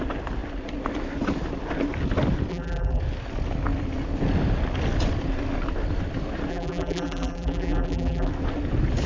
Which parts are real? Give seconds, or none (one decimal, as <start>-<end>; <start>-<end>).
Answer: 0.0-2.5; 3.0-6.5; 8.3-9.1

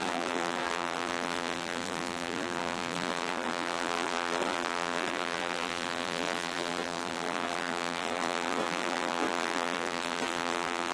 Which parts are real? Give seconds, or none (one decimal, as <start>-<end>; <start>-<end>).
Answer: none

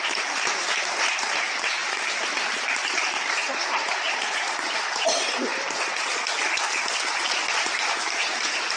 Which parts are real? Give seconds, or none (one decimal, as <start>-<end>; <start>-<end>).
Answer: 5.5-7.2

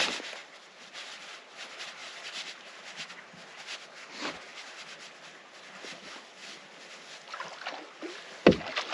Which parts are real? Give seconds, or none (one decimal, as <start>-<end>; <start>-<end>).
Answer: 0.0-0.4; 0.9-2.0; 3.1-4.5; 5.6-8.9

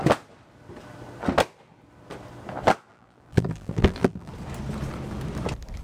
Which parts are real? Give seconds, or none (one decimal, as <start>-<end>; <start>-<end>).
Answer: 0.0-2.9; 4.3-5.8